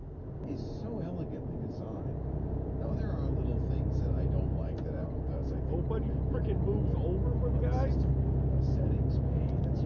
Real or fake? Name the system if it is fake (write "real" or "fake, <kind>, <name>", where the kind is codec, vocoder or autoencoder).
real